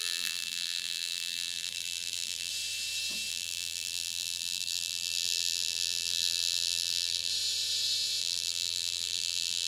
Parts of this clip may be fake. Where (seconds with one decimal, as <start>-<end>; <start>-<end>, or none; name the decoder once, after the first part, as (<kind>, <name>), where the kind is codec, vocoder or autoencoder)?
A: 0.0-2.5 (vocoder, BigVGAN v2); 3.3-7.3; 8.2-9.7